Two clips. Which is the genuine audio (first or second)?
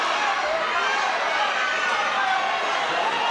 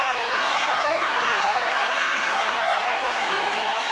first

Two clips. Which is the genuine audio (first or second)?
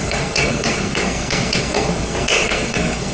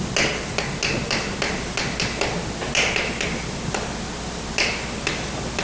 second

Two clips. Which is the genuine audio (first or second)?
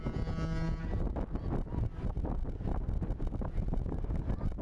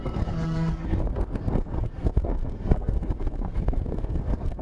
first